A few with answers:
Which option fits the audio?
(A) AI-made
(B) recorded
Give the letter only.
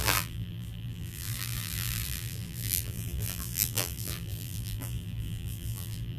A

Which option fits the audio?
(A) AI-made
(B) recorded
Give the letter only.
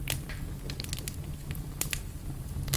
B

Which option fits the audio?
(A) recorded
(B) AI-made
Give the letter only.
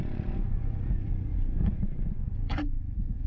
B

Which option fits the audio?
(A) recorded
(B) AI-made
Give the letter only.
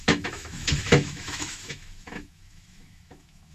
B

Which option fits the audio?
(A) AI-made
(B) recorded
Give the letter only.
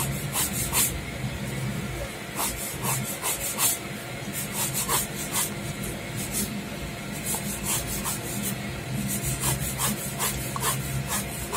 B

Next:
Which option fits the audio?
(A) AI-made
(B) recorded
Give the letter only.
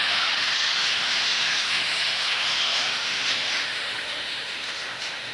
A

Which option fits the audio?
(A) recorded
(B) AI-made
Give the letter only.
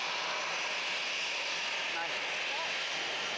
A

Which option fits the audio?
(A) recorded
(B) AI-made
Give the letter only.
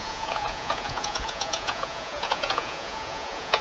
B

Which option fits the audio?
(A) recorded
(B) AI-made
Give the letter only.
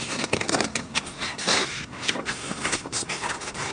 B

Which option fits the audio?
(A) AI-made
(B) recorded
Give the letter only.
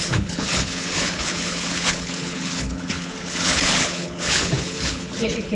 A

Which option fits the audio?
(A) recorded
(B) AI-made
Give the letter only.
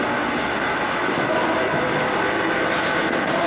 A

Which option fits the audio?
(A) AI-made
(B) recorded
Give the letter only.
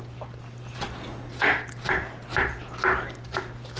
A